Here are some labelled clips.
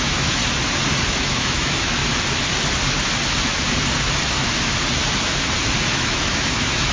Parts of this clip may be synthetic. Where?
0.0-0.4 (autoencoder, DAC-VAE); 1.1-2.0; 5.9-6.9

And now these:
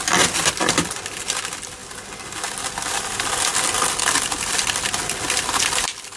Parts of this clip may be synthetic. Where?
none

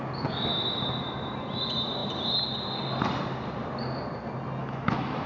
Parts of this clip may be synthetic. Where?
4.6-5.3 (autoencoder, DAC-VAE)

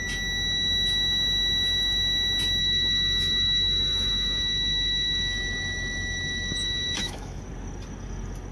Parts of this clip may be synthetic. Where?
2.6-7.4 (autoencoder, DAC-VAE)

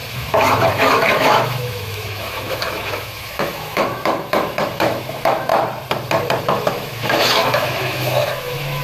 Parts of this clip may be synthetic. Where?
0.0-5.5 (autoencoder, DAC-VAE); 6.4-8.8

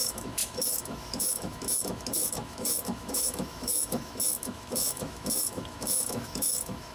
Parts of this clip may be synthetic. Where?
0.0-6.9 (autoencoder, DAC-VAE)

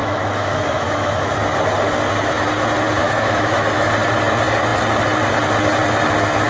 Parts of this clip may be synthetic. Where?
0.0-1.3 (autoencoder, DAC-VAE); 3.0-3.9

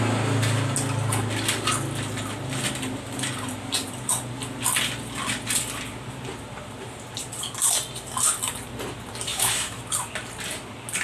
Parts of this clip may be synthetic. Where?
9.3-9.8 (autoencoder, DAC-VAE)